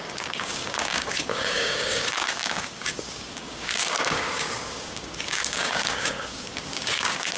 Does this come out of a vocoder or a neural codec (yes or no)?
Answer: yes